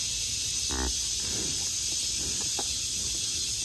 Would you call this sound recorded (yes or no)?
yes